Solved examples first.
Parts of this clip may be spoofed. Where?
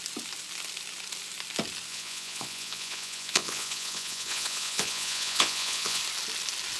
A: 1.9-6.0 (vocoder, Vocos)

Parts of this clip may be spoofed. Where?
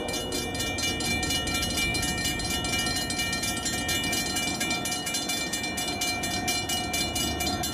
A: none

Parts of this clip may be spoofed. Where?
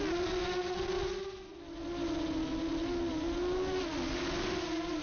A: none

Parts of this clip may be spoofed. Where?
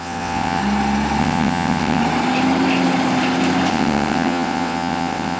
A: 0.0-0.6 (vocoder, WaveNeXt); 1.2-2.0; 3.7-5.4